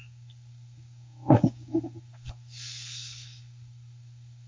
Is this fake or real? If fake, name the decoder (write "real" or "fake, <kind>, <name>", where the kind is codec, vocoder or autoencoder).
fake, codec, SNAC